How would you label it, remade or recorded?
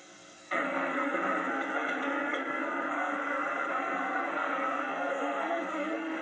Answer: remade